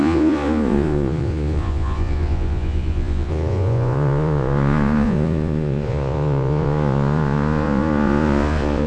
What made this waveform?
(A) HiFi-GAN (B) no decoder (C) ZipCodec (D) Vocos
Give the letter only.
D